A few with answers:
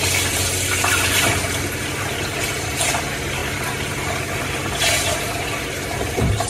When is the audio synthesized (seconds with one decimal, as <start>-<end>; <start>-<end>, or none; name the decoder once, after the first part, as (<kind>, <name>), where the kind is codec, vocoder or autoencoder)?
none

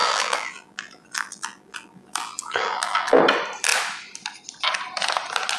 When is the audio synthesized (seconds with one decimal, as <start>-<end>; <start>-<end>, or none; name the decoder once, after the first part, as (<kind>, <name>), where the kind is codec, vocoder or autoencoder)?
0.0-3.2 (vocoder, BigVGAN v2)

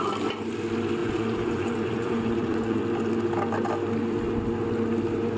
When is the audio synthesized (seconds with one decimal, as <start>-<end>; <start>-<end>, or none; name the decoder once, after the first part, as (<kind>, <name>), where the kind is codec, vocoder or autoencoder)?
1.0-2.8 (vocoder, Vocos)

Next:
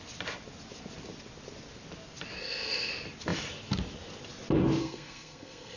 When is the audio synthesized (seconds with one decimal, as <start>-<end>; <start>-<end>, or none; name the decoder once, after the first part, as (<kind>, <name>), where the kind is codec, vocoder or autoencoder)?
2.4-2.9 (codec, SNAC); 4.8-5.8